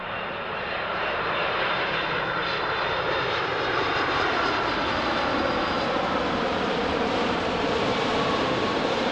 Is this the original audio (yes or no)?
no